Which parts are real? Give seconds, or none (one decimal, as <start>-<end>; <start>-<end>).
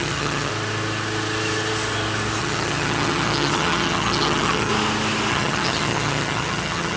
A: 0.5-2.4; 4.7-5.3